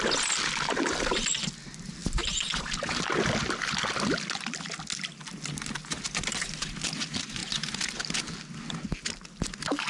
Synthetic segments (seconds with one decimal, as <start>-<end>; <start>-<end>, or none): 2.0-3.0; 7.4-7.9